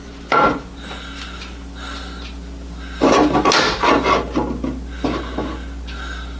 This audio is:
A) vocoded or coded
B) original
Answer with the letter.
B